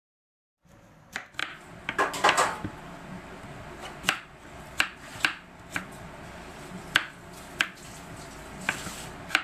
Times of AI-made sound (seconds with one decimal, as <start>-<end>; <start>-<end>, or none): none